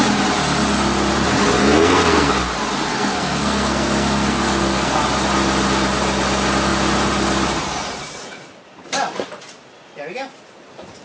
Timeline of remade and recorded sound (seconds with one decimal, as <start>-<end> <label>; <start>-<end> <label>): 0.0-1.6 recorded; 1.6-2.3 remade; 2.3-2.9 recorded; 2.9-5.0 remade; 5.0-11.0 recorded